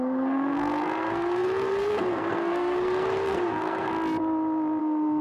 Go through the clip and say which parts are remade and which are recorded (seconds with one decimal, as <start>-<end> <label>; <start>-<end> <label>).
0.0-3.9 remade; 3.9-4.8 recorded; 4.8-5.2 remade